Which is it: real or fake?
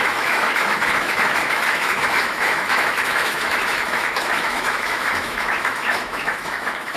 fake